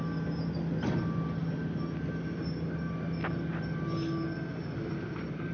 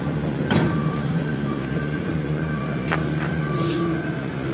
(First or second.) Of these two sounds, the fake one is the second